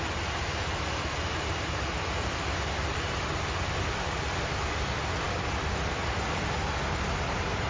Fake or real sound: real